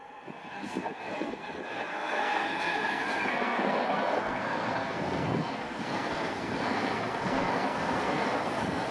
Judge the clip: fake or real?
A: fake